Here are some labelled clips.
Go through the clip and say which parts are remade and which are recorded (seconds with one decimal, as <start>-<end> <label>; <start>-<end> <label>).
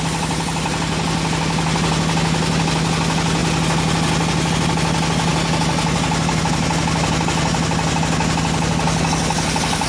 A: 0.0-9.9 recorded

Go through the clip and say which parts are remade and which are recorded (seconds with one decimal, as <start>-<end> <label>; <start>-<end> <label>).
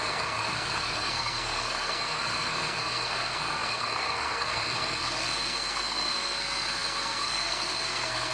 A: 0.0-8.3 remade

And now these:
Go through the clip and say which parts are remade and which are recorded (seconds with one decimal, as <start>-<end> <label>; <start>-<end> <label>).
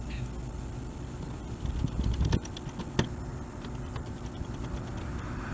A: 0.0-3.3 recorded; 3.3-5.5 remade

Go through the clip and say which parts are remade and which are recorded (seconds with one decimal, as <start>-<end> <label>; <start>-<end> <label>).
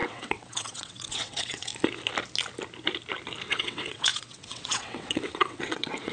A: 0.0-1.7 remade; 1.7-3.5 recorded; 3.5-6.1 remade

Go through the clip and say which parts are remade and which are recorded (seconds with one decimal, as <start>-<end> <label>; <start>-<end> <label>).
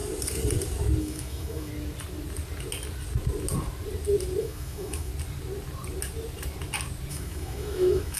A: 0.0-1.0 recorded; 1.0-1.7 remade; 1.7-4.4 recorded; 4.4-5.1 remade; 5.1-7.1 recorded; 7.1-8.2 remade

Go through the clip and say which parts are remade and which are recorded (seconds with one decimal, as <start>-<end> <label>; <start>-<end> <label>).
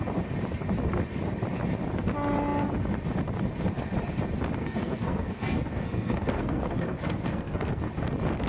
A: 0.0-4.6 recorded; 4.6-7.8 remade; 7.8-8.5 recorded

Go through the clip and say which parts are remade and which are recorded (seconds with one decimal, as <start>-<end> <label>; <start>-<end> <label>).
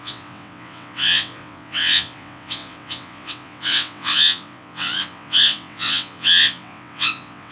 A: 0.0-7.5 remade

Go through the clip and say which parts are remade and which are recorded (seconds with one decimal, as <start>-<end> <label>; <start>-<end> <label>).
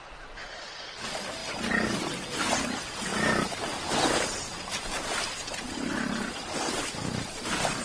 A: 0.0-7.8 recorded